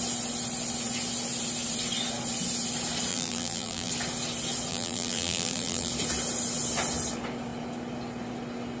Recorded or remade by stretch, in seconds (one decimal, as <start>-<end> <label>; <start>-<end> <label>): 0.0-3.1 recorded; 3.1-3.9 remade; 3.9-4.7 recorded; 4.7-5.9 remade; 5.9-8.8 recorded